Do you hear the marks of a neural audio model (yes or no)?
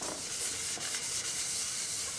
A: yes